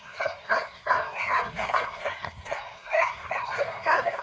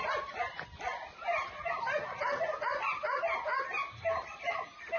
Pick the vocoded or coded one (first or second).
first